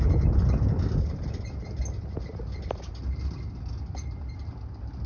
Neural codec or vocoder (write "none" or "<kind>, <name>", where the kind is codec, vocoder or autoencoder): none